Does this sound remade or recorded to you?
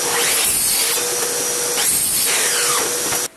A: recorded